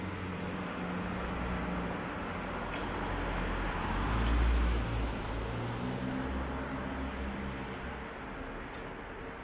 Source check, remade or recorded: recorded